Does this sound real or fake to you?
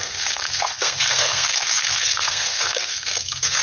fake